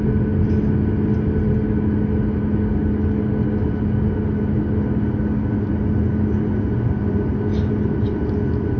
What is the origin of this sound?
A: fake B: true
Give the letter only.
B